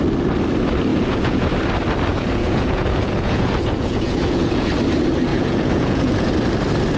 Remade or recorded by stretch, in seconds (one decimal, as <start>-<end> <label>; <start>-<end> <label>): 0.0-0.9 recorded; 0.9-1.5 remade; 1.5-2.1 recorded; 2.1-4.7 remade; 4.7-5.3 recorded; 5.3-6.3 remade; 6.3-7.0 recorded